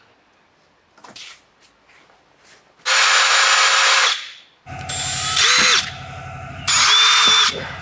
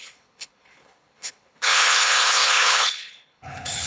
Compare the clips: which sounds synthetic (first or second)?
second